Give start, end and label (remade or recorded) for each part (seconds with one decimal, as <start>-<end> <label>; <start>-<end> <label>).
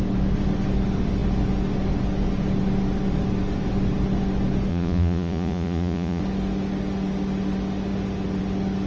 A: 0.0-4.7 recorded; 4.7-6.2 remade; 6.2-8.9 recorded